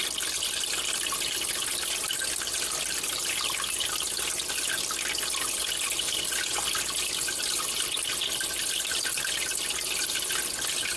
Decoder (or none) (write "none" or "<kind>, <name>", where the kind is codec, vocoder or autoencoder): none